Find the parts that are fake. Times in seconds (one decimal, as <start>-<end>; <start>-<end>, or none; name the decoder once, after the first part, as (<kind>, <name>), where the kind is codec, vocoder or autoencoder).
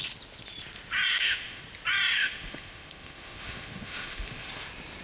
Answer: 1.1-1.6 (autoencoder, DAC-VAE); 2.1-4.5